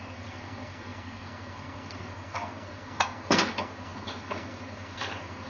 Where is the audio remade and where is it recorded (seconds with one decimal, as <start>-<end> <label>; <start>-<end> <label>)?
0.0-5.5 remade